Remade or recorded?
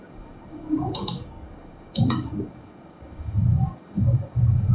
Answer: remade